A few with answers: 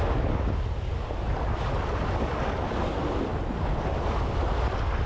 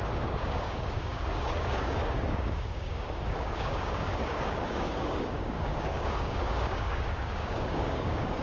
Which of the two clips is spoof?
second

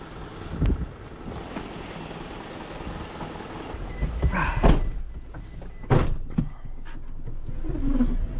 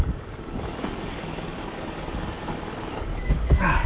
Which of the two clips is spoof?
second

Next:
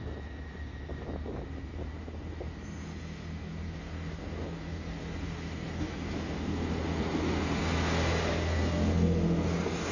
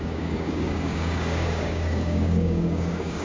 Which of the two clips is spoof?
second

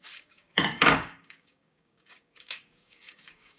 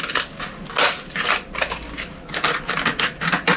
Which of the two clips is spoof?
first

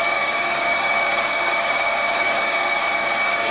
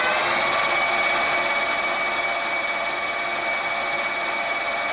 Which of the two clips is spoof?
first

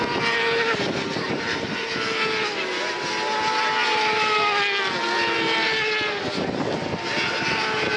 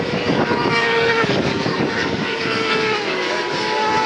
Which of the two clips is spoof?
second